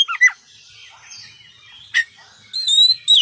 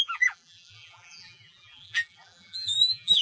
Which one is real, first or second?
first